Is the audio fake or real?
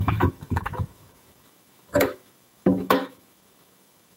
fake